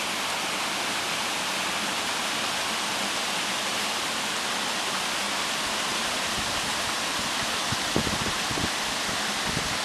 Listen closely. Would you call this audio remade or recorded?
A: recorded